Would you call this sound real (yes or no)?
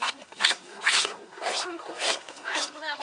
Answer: no